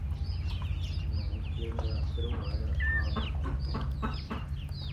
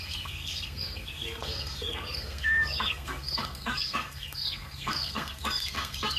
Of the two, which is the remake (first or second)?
second